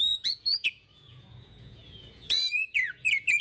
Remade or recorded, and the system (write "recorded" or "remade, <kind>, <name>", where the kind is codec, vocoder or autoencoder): remade, vocoder, Vocos